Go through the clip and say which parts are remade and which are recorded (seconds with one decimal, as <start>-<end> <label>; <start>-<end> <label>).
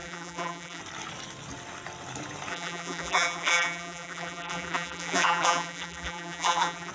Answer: 0.0-0.8 remade; 0.8-2.5 recorded; 2.5-6.9 remade